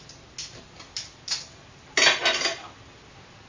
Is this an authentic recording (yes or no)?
yes